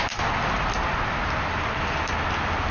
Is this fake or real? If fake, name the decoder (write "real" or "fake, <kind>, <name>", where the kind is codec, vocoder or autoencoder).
real